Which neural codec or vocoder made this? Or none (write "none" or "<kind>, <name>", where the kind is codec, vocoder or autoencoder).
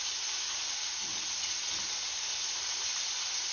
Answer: none